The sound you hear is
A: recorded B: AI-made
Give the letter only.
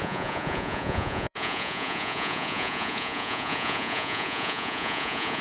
B